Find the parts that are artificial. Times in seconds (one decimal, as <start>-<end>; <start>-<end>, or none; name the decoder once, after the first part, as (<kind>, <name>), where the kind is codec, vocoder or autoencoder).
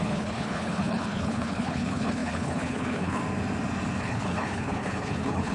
0.0-3.2 (codec, HILCodec); 4.0-5.5